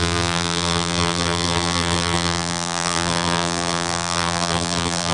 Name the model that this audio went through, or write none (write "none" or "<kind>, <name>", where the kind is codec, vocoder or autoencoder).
vocoder, BigVGAN v2